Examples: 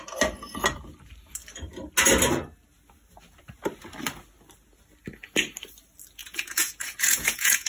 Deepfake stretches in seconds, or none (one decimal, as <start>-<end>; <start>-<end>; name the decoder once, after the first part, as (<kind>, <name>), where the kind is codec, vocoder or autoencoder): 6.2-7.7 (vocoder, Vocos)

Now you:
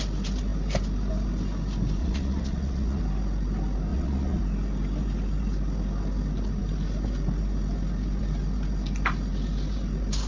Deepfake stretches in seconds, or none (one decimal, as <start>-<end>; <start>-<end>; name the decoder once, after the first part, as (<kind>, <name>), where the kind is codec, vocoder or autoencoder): 2.0-3.0 (vocoder, Vocos); 3.9-4.4

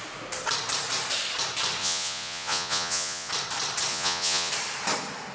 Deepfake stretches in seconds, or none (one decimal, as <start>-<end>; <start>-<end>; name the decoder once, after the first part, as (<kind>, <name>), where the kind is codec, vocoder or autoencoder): 1.8-3.3 (vocoder, Vocos); 3.9-4.5

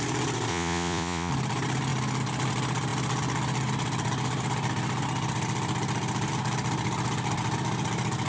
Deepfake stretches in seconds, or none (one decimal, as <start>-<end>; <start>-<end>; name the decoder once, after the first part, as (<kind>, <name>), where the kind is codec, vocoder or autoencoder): 0.5-1.3 (vocoder, Vocos)